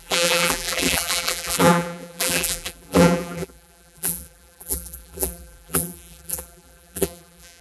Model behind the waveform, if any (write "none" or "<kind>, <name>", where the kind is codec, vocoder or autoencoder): vocoder, BigVGAN v2